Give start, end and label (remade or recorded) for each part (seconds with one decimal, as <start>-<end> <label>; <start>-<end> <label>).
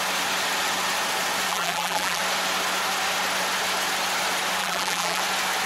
0.0-1.5 recorded; 1.5-2.2 remade; 2.2-4.6 recorded; 4.6-5.2 remade; 5.2-5.7 recorded